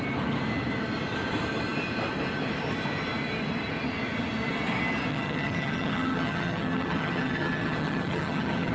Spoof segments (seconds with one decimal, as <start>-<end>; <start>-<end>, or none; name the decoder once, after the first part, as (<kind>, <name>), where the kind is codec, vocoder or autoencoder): 5.1-8.7 (vocoder, HiFi-GAN)